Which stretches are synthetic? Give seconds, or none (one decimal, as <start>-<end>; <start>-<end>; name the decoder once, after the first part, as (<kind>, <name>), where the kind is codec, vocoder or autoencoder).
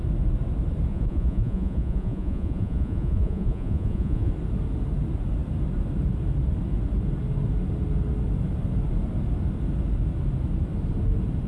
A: 0.9-4.3 (vocoder, Vocos)